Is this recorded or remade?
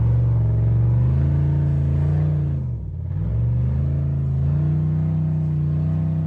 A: recorded